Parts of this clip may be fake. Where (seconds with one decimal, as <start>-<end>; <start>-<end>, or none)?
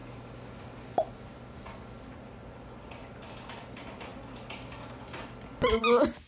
none